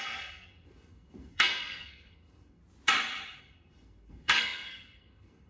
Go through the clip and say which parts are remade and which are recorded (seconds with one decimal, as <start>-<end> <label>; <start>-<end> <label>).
0.0-2.6 remade; 2.6-3.4 recorded; 3.4-5.5 remade